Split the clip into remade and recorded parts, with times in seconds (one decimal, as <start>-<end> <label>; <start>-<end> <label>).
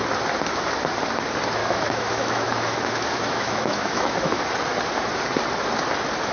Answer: 0.0-1.6 recorded; 1.6-4.4 remade; 4.4-6.3 recorded